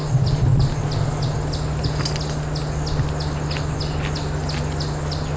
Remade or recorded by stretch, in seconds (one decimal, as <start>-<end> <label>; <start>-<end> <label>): 0.0-5.4 recorded